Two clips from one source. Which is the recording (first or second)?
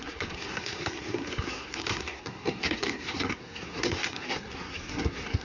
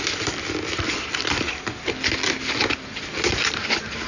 second